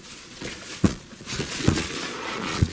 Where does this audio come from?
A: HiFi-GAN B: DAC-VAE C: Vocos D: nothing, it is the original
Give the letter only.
C